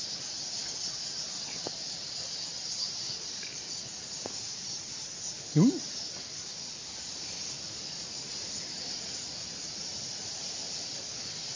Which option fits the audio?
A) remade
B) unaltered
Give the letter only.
B